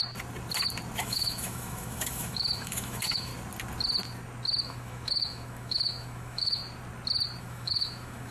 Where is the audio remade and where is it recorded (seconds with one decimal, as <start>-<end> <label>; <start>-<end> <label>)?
0.0-1.0 recorded; 1.0-3.3 remade; 3.3-4.6 recorded; 4.6-6.6 remade; 6.6-7.4 recorded; 7.4-8.3 remade